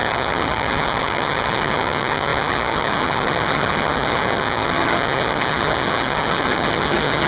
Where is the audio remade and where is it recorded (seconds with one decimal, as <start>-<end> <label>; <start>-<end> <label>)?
0.0-7.3 remade